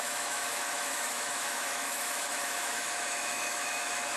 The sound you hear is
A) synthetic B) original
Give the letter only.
A